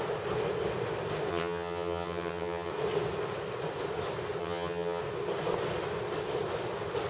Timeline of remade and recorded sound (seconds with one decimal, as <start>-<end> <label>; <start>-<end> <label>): 0.0-1.3 recorded; 1.3-2.7 remade; 2.7-4.4 recorded; 4.4-5.0 remade; 5.0-7.1 recorded